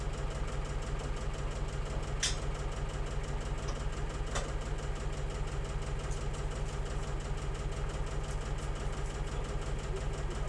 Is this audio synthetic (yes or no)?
no